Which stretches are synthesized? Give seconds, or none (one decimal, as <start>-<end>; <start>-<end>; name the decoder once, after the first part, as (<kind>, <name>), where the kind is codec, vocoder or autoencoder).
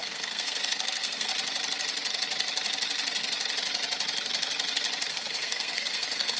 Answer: 0.0-1.3 (codec, SNAC); 5.1-6.4